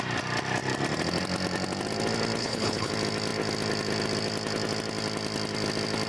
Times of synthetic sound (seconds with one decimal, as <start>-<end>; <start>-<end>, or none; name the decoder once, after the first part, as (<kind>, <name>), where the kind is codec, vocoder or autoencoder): 2.4-2.9 (codec, HILCodec)